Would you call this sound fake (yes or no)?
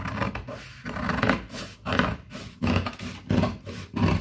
no